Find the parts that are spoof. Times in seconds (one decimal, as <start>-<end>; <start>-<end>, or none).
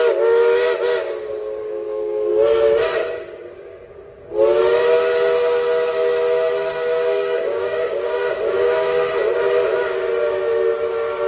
1.6-2.3; 3.0-4.3; 6.7-9.1